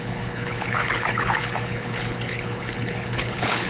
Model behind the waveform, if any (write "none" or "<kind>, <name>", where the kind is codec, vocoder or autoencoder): codec, HILCodec